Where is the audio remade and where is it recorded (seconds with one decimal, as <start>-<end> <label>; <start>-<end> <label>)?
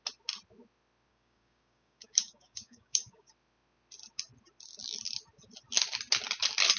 0.0-1.1 recorded; 1.1-3.3 remade; 3.3-6.8 recorded